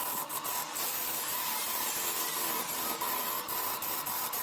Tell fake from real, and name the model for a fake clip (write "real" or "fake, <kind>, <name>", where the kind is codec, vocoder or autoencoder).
real